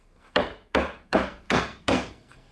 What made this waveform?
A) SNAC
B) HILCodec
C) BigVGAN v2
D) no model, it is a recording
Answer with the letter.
A